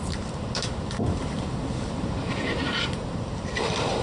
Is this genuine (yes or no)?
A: no